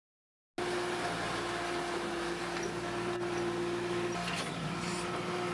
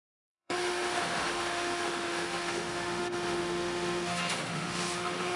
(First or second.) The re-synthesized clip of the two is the second